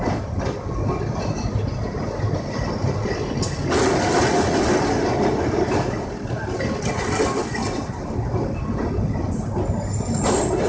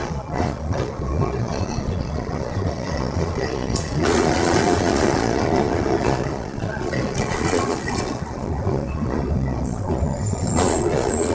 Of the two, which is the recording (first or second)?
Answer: first